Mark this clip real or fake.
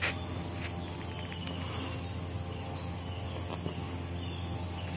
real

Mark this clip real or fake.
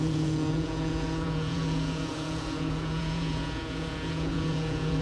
fake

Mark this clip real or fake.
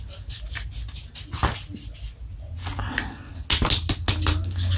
real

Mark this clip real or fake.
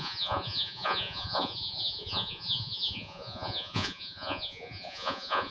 fake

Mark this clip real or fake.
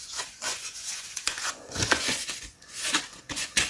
fake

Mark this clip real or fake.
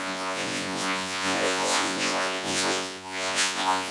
fake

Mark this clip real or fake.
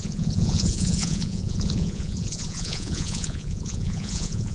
fake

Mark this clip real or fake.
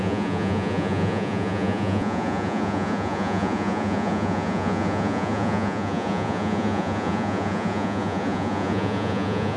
fake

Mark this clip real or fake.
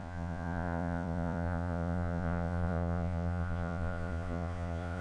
fake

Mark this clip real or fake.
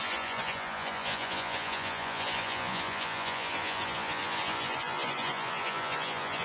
fake